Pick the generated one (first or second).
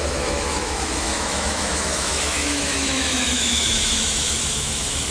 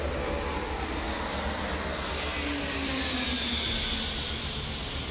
first